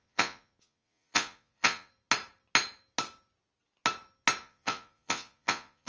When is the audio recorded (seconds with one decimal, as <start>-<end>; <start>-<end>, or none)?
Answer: 1.9-4.4